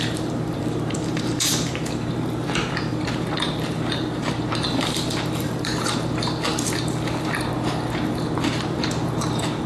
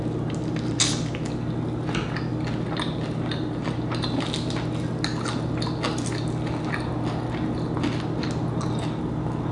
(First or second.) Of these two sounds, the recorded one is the second